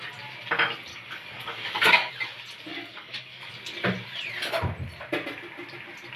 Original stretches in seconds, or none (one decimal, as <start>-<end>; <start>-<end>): 0.0-0.9; 2.1-2.7; 3.5-6.2